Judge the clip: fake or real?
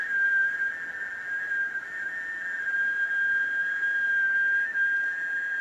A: real